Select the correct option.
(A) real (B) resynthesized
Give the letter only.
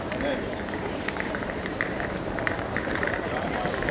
B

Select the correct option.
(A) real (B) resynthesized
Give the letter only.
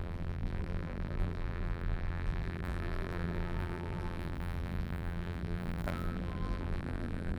B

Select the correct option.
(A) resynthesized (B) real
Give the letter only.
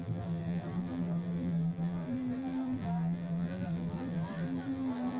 A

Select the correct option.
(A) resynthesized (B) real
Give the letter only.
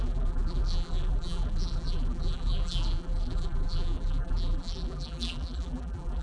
A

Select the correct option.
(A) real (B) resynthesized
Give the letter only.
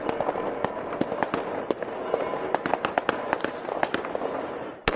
A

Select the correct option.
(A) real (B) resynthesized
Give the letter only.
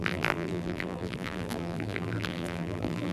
B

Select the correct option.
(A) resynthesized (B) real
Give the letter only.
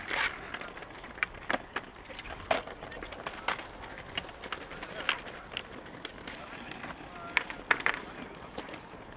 B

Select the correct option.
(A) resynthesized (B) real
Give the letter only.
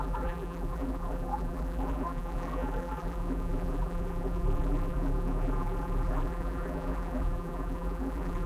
A